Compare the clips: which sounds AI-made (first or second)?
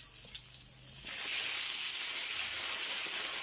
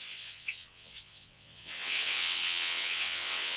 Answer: second